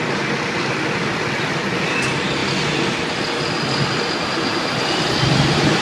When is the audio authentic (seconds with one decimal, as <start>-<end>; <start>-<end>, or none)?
0.0-5.8